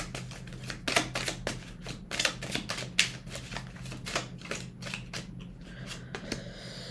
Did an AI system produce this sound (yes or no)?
no